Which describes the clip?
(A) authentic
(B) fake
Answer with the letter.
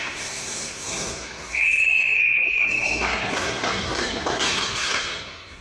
B